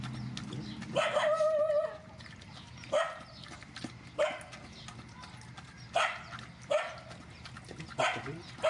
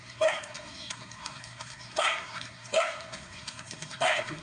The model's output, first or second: second